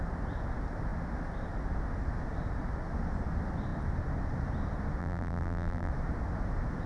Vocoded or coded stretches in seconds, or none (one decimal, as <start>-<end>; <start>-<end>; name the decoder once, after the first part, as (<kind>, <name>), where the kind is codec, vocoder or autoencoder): 5.0-5.9 (vocoder, BigVGAN v2)